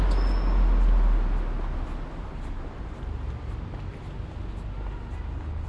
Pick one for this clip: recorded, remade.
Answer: recorded